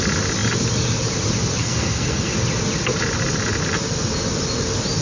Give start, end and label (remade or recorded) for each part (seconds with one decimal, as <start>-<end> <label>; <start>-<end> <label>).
0.0-1.6 recorded; 1.6-2.3 remade; 2.3-5.0 recorded